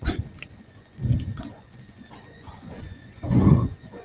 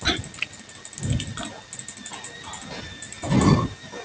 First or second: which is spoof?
first